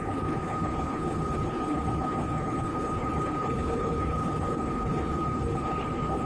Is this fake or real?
fake